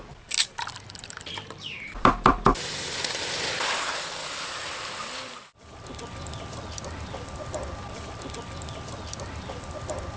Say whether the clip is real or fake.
fake